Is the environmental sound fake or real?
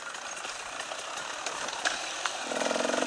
real